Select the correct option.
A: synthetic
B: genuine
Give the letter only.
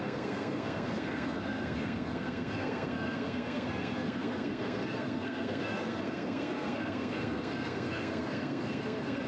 A